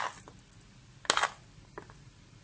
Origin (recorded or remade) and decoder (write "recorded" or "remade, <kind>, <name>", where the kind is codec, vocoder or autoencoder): recorded